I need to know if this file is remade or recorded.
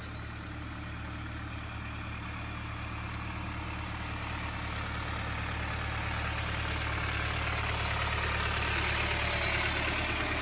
recorded